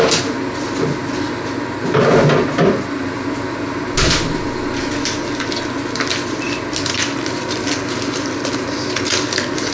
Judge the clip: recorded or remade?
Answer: recorded